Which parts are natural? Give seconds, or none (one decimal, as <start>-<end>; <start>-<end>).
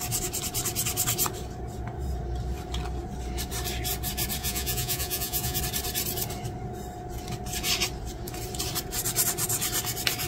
0.0-4.4; 5.6-10.3